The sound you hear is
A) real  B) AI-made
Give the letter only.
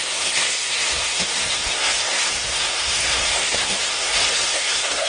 B